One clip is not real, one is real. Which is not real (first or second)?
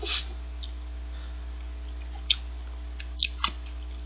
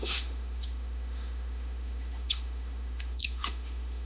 second